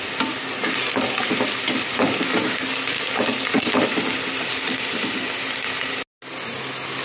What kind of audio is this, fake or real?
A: real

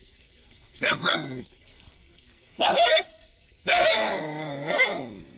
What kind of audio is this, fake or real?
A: fake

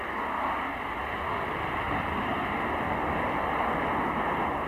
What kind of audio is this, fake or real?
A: real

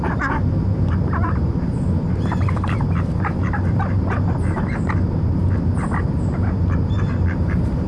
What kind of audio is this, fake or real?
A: fake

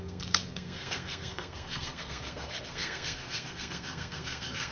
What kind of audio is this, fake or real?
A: fake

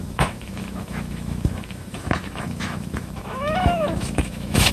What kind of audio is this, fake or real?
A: fake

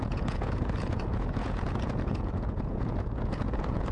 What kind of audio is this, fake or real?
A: fake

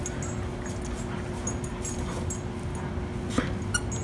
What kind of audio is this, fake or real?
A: real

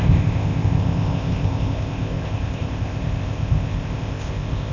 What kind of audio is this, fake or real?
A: fake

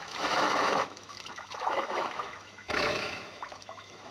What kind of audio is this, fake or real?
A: fake